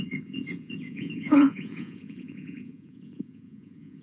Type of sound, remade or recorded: remade